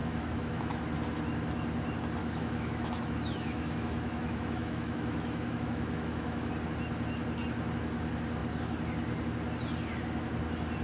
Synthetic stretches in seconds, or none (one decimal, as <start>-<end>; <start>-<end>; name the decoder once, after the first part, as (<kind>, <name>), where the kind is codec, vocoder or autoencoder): 0.0-0.8 (autoencoder, DAC-VAE); 2.2-6.5

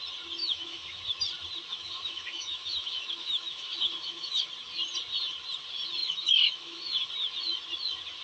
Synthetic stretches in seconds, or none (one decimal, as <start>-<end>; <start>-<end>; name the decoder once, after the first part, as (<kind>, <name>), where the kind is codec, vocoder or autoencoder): 0.4-1.0 (autoencoder, DAC-VAE); 1.7-4.5; 6.0-7.1

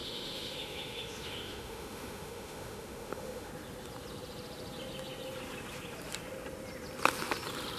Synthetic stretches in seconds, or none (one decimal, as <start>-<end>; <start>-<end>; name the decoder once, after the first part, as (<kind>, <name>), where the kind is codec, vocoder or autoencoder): 0.0-3.5 (autoencoder, DAC-VAE)

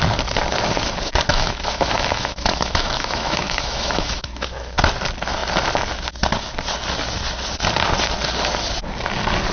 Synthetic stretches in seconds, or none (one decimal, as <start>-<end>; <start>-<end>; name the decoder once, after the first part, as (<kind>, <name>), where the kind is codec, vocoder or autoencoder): 1.3-4.8 (autoencoder, DAC-VAE)

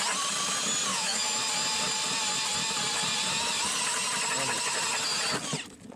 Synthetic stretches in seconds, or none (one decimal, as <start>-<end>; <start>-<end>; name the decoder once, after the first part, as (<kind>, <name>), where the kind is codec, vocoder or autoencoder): 0.9-1.4 (autoencoder, DAC-VAE)

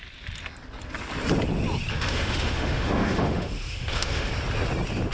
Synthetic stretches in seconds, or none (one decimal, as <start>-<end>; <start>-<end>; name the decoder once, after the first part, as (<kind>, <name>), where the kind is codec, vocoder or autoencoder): 1.9-4.3 (autoencoder, DAC-VAE)